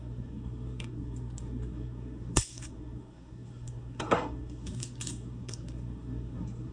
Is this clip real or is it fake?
fake